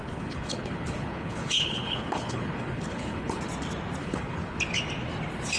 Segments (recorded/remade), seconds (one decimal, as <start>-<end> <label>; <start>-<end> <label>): 0.0-3.4 remade; 3.4-4.0 recorded; 4.0-4.6 remade; 4.6-5.6 recorded